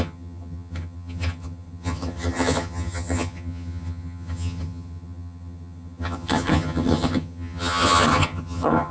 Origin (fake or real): fake